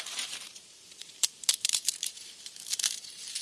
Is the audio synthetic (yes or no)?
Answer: yes